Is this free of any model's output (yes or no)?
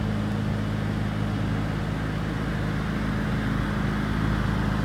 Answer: yes